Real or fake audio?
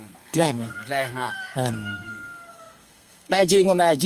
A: fake